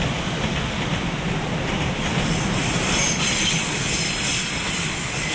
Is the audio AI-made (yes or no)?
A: no